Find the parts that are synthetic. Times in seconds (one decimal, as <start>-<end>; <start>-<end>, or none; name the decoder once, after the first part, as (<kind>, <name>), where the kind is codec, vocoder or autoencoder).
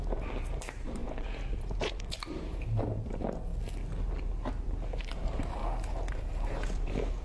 0.0-3.5 (vocoder, BigVGAN v2); 5.0-5.6; 6.1-7.2